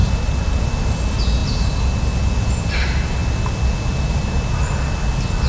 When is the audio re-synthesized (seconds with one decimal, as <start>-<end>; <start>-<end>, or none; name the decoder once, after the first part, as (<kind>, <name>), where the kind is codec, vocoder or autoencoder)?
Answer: none